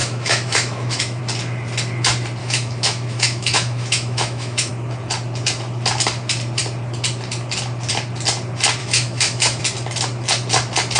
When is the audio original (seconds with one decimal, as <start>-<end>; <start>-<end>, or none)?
1.2-2.4; 4.7-8.8; 9.6-11.0